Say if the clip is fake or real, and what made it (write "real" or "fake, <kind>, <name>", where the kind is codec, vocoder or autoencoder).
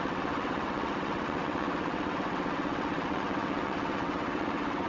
fake, vocoder, WaveNeXt